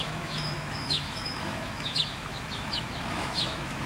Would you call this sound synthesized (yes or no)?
yes